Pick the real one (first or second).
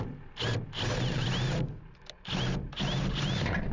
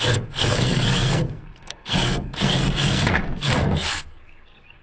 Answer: first